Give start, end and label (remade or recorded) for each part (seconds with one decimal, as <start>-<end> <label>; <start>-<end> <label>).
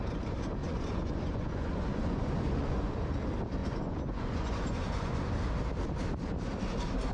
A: 0.0-0.6 recorded; 0.6-2.9 remade; 2.9-3.6 recorded; 3.6-5.3 remade; 5.3-7.1 recorded